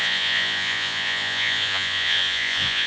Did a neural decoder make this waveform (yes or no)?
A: yes